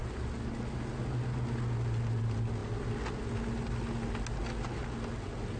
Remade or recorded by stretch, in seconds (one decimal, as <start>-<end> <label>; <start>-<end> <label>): 0.0-5.6 recorded